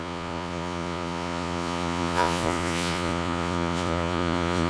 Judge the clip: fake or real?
fake